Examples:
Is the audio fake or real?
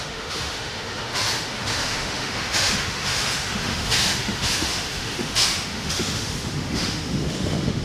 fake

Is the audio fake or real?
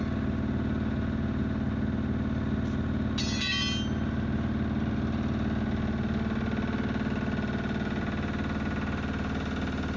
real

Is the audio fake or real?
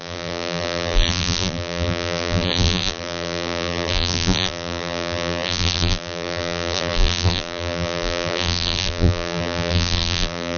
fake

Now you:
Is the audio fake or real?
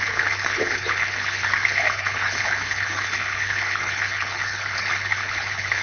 fake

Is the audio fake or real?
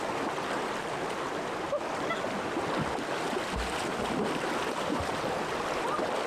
real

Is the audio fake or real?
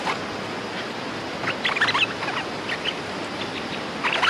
real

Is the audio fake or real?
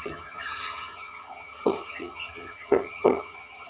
fake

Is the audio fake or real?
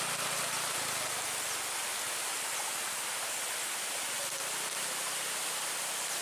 real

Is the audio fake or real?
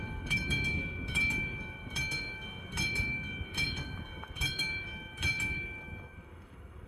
fake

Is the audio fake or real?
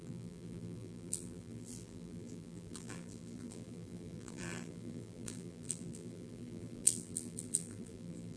fake